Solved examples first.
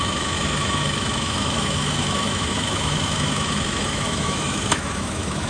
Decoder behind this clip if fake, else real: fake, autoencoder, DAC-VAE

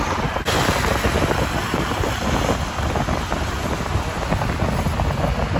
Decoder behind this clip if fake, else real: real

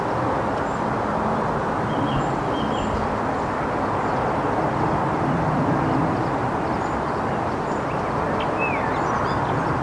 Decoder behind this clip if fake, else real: real